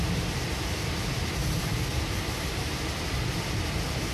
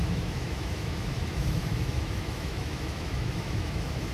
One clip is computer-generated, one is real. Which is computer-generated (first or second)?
second